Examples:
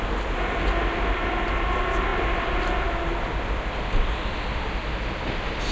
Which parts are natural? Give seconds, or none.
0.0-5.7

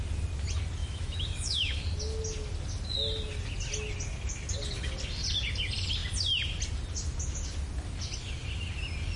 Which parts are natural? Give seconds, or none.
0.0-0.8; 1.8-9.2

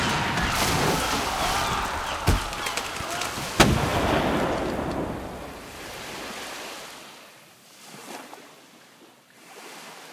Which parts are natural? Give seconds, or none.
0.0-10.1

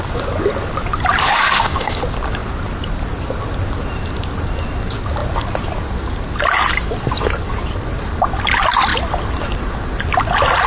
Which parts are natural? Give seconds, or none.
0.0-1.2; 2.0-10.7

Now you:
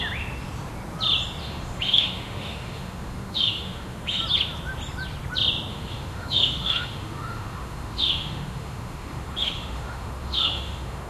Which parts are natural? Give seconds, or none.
0.0-1.4; 4.2-5.7